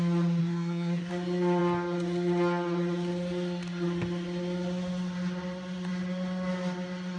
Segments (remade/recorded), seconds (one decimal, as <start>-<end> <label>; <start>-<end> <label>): 0.0-0.4 recorded; 0.4-1.1 remade; 1.1-7.2 recorded

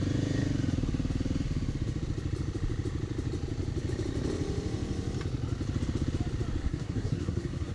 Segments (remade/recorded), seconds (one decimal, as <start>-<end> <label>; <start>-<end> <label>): 0.0-6.6 recorded; 6.6-7.7 remade

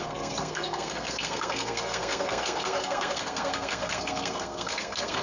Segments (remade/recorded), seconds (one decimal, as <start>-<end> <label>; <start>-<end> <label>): 0.0-5.2 remade

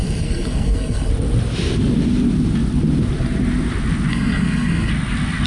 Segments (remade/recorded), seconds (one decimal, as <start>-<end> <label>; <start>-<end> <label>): 0.0-1.1 remade; 1.1-4.1 recorded; 4.1-4.9 remade; 4.9-5.5 recorded

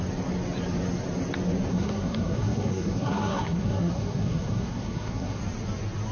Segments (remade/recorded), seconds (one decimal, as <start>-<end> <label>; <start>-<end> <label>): 0.0-1.7 recorded; 1.7-5.4 remade; 5.4-6.1 recorded

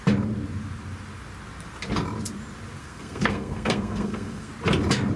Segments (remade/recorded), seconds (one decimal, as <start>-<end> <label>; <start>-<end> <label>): 0.0-2.8 recorded; 2.8-4.5 remade; 4.5-5.2 recorded